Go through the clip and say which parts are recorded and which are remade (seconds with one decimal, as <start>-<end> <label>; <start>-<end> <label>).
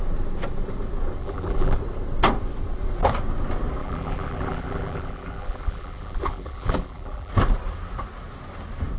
0.0-1.2 recorded; 1.2-1.8 remade; 1.8-3.8 recorded; 3.8-7.3 remade; 7.3-9.0 recorded